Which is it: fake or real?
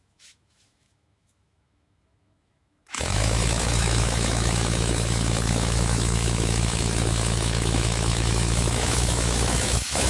fake